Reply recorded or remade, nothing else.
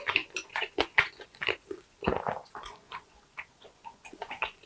remade